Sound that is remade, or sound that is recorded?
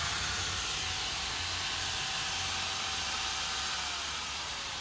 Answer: recorded